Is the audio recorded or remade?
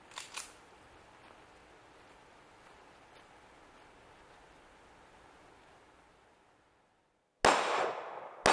recorded